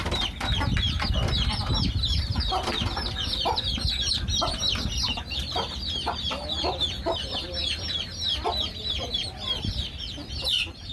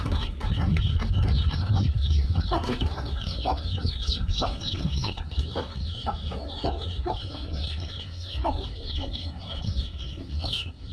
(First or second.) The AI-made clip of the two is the second